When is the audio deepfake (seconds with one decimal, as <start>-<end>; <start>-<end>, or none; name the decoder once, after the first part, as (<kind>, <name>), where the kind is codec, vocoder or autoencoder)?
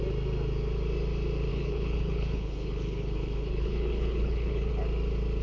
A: 1.5-4.7 (codec, HILCodec)